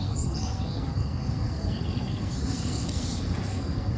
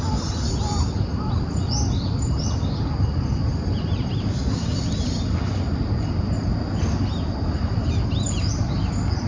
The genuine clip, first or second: second